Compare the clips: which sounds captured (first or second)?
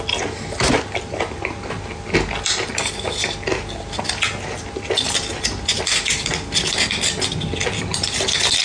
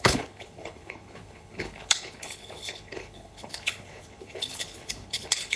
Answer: first